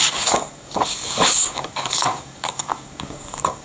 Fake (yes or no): yes